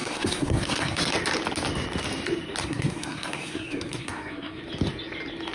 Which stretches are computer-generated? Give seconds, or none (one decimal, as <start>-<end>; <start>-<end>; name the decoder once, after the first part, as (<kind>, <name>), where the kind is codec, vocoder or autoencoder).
0.0-1.1 (codec, SNAC); 2.6-4.6